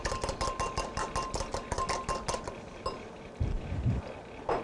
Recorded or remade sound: recorded